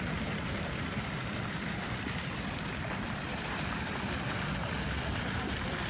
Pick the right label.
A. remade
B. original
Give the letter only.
A